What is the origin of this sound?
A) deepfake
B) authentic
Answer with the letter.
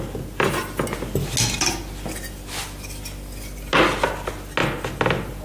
B